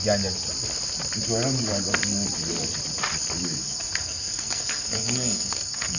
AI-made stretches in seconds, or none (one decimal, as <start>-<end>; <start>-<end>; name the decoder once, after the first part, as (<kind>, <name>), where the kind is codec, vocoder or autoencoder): 3.6-6.0 (codec, SNAC)